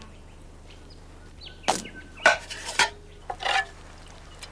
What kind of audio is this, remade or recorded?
recorded